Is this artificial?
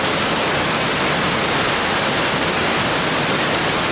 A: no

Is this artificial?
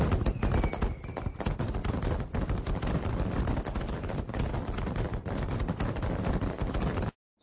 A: no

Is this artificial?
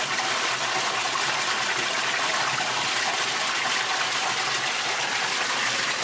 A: no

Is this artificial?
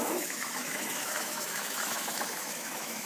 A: yes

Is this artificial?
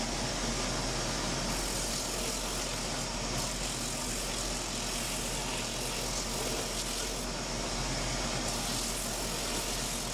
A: no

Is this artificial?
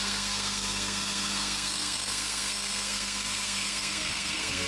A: yes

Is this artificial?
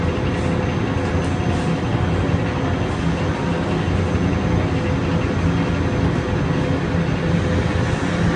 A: no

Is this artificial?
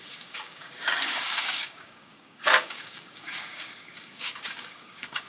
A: yes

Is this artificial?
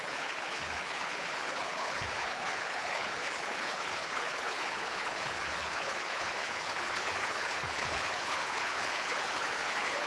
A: yes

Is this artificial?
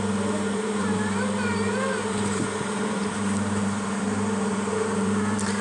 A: yes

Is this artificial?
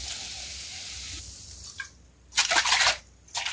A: no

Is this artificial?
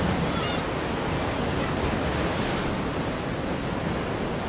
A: no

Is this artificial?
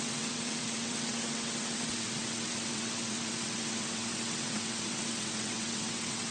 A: yes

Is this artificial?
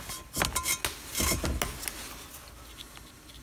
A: no